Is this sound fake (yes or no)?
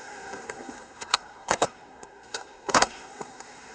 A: yes